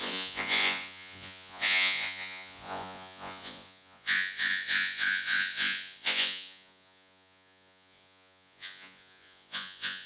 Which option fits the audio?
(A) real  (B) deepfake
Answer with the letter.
B